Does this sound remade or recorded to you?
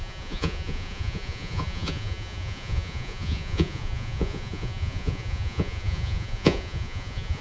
remade